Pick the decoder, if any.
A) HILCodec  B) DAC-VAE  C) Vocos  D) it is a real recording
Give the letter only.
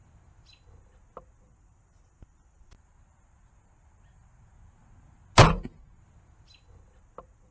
D